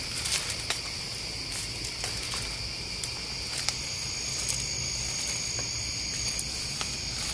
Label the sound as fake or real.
real